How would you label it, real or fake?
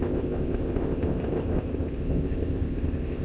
fake